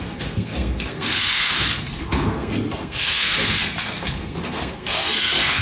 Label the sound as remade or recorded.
remade